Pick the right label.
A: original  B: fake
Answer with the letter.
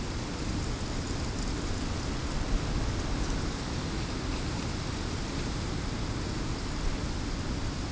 A